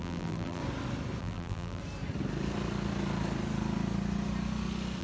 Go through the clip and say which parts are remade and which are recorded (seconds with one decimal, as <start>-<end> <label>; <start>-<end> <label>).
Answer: 0.0-0.6 remade; 0.6-1.2 recorded; 1.2-1.8 remade; 1.8-5.0 recorded